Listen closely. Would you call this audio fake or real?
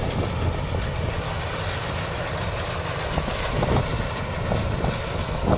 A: real